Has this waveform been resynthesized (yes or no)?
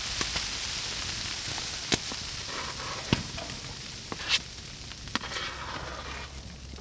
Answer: no